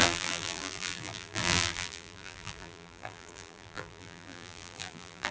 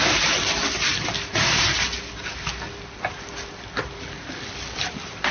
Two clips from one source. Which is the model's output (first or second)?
first